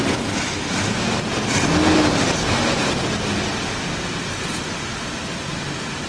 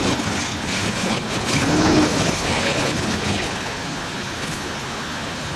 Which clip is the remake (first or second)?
second